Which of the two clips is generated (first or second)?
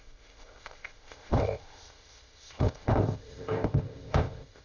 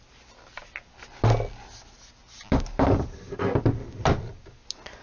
first